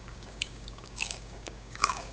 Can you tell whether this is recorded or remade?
remade